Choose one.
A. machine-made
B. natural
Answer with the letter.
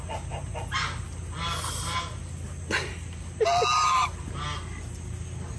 B